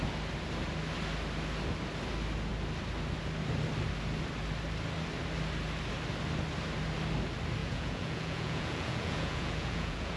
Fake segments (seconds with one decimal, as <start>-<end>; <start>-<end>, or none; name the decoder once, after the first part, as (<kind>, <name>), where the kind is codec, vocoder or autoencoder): 7.6-10.2 (vocoder, Vocos)